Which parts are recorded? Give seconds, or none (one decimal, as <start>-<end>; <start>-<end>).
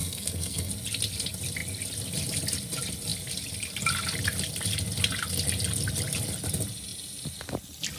0.7-8.0